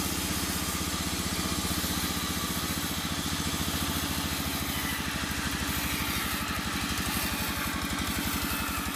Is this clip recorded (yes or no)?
yes